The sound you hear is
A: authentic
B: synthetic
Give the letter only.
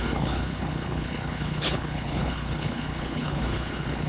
B